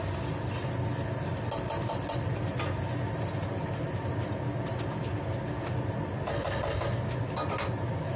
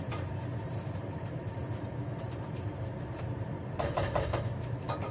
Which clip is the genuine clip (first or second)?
first